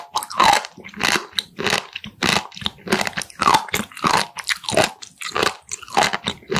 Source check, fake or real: real